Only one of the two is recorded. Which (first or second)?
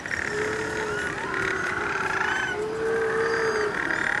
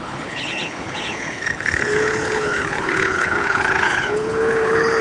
first